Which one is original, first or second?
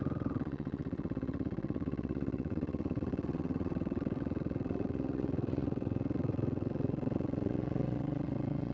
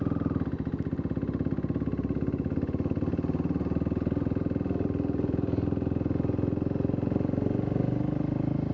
second